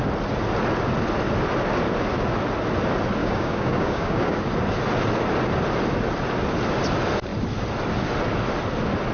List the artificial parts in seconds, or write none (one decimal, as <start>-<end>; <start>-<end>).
3.2-4.4